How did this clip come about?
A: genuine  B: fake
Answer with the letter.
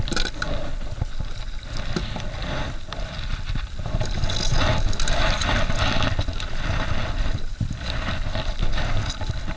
A